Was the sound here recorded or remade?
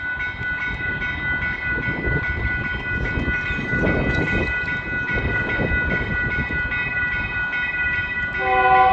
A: recorded